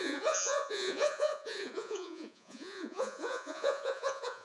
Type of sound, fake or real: fake